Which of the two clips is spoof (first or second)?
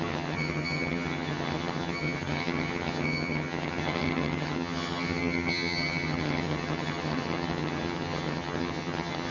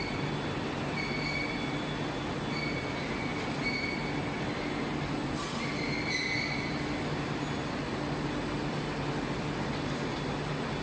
first